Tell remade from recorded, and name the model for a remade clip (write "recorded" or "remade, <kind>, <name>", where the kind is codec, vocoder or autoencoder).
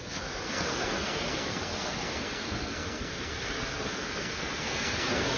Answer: remade, codec, SNAC